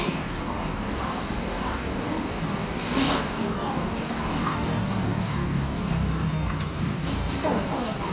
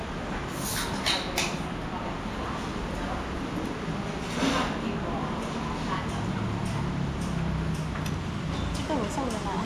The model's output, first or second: first